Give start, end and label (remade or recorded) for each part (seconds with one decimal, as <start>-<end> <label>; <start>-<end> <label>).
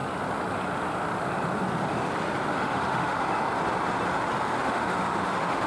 0.0-2.5 recorded; 2.5-3.2 remade; 3.2-4.6 recorded; 4.6-5.7 remade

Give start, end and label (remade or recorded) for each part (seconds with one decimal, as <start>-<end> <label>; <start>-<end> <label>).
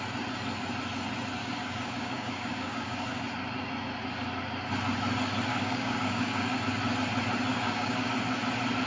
0.0-1.4 recorded; 1.4-3.2 remade; 3.2-5.5 recorded; 5.5-6.6 remade; 6.6-7.5 recorded; 7.5-8.1 remade; 8.1-8.9 recorded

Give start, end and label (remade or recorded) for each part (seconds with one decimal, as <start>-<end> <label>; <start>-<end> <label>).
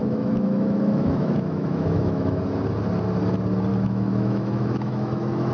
0.0-2.4 remade; 2.4-3.7 recorded; 3.7-5.5 remade